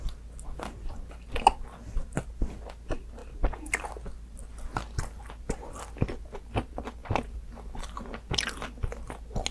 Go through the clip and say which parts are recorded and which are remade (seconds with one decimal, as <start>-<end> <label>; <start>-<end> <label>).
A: 0.0-9.5 recorded